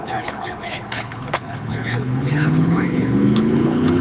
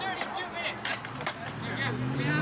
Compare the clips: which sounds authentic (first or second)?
second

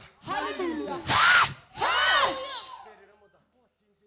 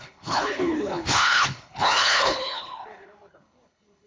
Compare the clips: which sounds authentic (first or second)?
first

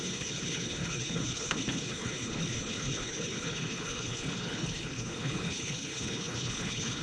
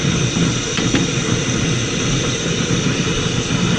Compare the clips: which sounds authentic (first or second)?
second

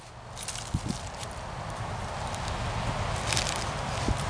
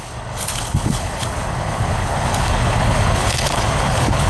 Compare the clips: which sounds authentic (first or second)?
first